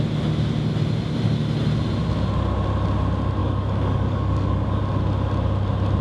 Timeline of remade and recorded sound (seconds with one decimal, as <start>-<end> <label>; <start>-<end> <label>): 0.0-3.4 recorded; 3.4-4.8 remade; 4.8-6.0 recorded